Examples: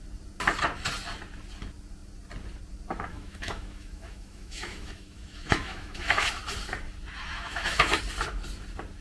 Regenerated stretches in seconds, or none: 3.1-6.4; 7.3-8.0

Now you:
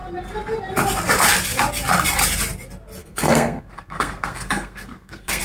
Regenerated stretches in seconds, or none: 3.0-5.4

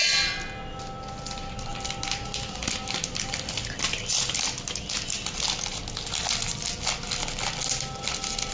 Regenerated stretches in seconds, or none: none

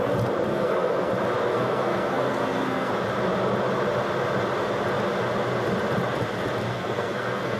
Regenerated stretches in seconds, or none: 0.5-1.1; 1.5-2.9; 6.7-7.6

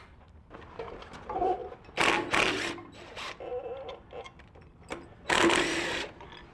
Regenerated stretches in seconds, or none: none